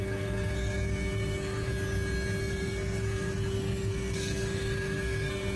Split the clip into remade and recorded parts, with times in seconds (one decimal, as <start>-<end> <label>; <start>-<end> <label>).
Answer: 0.0-1.7 remade; 1.7-2.4 recorded; 2.4-5.6 remade